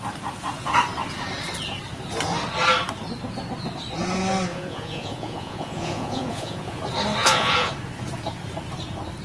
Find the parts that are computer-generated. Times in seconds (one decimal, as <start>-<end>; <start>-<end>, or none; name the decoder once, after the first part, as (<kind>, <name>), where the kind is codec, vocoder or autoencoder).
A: 4.5-6.8 (vocoder, Vocos); 7.2-7.7